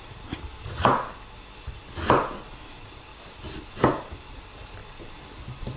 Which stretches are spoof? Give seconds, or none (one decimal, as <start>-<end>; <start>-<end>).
0.0-0.5; 2.7-3.1; 4.1-4.8